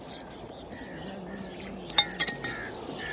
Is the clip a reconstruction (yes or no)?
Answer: no